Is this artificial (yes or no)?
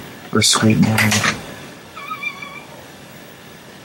yes